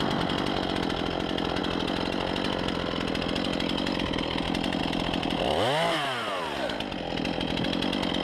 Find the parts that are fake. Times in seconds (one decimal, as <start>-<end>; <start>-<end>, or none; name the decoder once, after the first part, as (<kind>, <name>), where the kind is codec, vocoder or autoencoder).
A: none